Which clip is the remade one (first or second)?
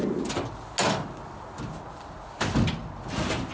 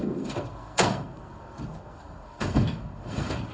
second